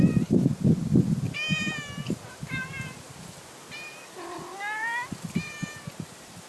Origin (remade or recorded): recorded